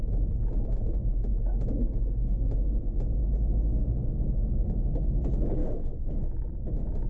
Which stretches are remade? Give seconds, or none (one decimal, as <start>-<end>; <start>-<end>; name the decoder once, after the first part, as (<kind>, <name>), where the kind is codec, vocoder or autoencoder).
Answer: 5.6-6.6 (autoencoder, DAC-VAE)